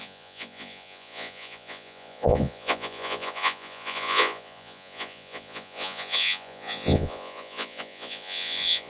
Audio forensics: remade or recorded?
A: remade